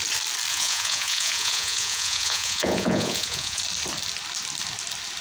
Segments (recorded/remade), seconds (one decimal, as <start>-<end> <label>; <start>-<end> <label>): 0.0-0.5 recorded; 0.5-3.6 remade; 3.6-5.2 recorded